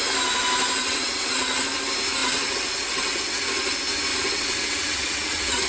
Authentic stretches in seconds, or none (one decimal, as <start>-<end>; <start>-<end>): 0.0-0.8; 1.6-2.2; 3.4-4.1